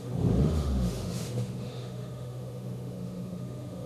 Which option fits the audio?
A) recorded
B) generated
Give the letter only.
B